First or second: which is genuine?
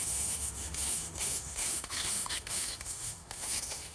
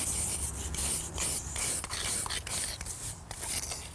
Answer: second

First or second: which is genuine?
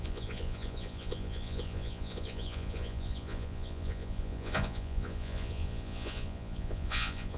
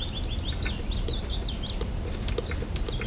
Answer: second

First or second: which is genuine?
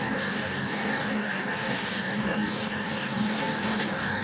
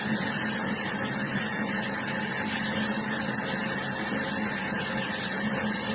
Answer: second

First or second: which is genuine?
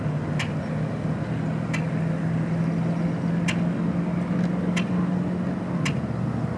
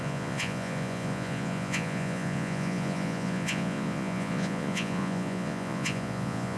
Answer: first